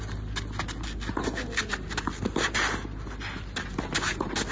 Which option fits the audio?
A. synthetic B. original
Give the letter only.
B